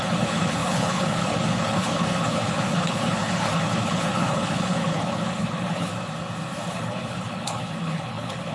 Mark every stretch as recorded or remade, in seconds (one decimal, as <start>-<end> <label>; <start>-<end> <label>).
0.0-5.9 remade; 5.9-6.7 recorded; 6.7-8.5 remade

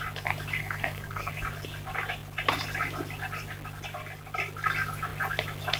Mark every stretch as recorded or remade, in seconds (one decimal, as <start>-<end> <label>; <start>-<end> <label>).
0.0-0.6 recorded; 0.6-1.3 remade; 1.3-5.8 recorded

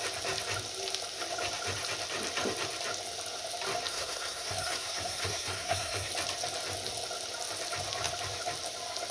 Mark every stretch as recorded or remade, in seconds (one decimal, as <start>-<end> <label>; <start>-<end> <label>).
0.0-3.9 recorded; 3.9-6.1 remade; 6.1-9.1 recorded

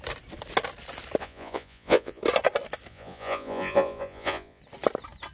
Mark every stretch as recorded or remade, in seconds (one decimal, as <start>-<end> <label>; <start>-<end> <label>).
0.0-1.2 recorded; 1.2-2.2 remade; 2.2-2.9 recorded; 2.9-4.6 remade; 4.6-5.3 recorded

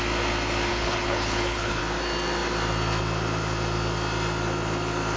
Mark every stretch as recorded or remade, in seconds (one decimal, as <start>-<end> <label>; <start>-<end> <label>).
0.0-0.7 recorded; 0.7-1.8 remade; 1.8-5.2 recorded

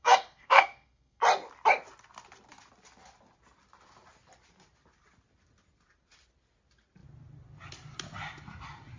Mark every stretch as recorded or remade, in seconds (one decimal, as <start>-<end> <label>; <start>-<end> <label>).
0.0-1.2 remade; 1.2-9.0 recorded